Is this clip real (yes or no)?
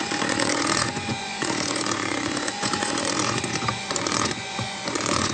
no